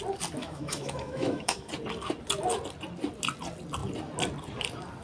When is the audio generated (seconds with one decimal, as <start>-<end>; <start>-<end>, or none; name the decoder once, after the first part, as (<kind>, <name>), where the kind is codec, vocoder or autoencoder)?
0.4-1.7 (autoencoder, DAC-VAE)

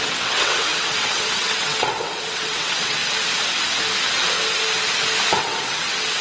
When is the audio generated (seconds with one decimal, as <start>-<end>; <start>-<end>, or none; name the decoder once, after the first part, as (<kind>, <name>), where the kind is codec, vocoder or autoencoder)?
0.0-3.0 (vocoder, WaveNeXt); 5.4-6.2

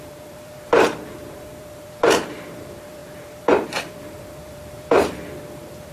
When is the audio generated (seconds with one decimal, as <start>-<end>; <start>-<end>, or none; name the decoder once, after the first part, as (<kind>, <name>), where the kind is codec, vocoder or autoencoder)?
0.0-5.9 (vocoder, BigVGAN v2)

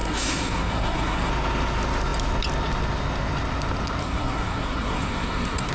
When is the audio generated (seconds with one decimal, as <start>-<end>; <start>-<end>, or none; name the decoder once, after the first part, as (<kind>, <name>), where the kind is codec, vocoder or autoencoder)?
0.0-1.3 (codec, SNAC); 4.0-5.7

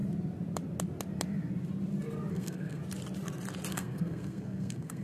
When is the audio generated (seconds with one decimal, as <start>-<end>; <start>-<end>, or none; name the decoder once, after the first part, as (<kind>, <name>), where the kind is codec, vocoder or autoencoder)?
2.3-2.8 (codec, SNAC); 3.7-5.0

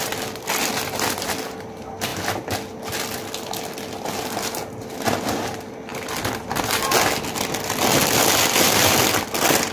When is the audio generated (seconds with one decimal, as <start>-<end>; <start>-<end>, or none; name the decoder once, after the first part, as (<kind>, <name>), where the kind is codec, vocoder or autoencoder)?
none

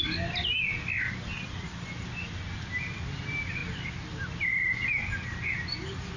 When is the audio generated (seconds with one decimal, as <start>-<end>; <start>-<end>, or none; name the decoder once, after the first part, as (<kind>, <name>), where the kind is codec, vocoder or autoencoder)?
none

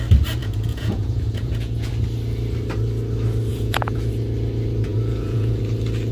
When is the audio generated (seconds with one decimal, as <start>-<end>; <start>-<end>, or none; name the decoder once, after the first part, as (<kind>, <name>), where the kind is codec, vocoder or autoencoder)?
0.4-1.9 (vocoder, Vocos); 3.5-4.1; 4.9-5.6